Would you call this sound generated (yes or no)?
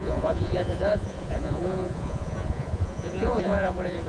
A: yes